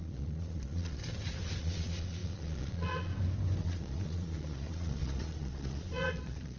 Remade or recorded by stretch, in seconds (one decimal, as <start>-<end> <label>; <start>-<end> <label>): 0.0-1.0 remade; 1.0-1.6 recorded; 1.6-3.1 remade; 3.1-3.6 recorded; 3.6-6.6 remade